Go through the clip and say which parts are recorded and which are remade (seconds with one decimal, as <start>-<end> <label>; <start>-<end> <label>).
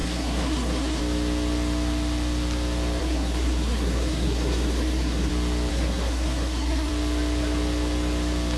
0.0-1.0 remade; 1.0-3.0 recorded; 3.0-5.3 remade; 5.3-5.7 recorded; 5.7-6.9 remade; 6.9-8.6 recorded